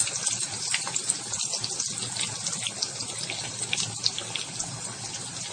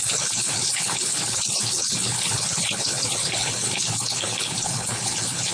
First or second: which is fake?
second